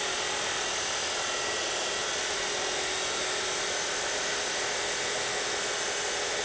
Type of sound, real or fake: real